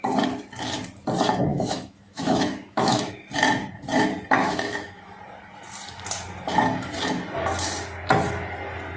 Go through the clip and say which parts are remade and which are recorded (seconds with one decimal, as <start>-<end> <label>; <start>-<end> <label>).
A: 0.0-1.5 recorded; 1.5-3.1 remade; 3.1-4.4 recorded; 4.4-5.1 remade; 5.1-9.0 recorded